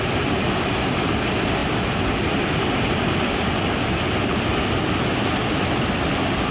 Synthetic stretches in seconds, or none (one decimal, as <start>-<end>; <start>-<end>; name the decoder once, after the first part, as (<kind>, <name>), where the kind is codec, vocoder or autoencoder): none

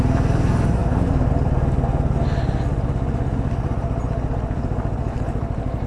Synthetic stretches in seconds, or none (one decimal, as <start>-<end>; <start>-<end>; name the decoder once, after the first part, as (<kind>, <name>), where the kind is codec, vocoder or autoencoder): none